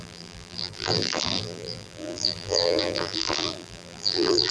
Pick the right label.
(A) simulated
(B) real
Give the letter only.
A